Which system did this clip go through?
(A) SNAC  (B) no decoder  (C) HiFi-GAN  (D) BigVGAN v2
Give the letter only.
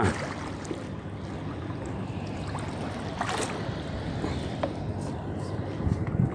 D